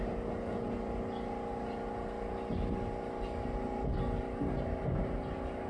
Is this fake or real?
real